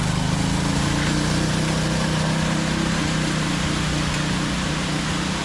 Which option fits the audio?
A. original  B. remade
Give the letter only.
A